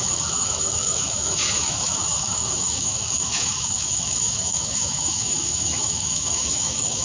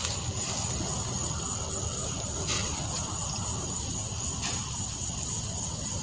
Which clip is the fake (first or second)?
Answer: first